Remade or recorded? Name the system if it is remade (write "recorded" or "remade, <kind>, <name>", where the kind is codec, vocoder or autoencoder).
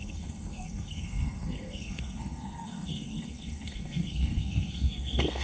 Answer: remade, codec, SNAC